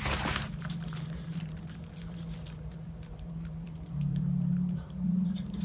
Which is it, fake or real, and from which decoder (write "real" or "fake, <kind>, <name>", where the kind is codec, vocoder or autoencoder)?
fake, vocoder, BigVGAN v2